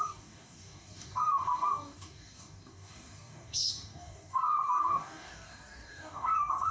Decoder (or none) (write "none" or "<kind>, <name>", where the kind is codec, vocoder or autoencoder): codec, DAC